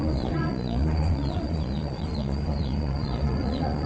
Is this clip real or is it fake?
fake